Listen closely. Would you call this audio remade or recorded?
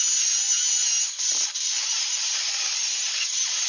recorded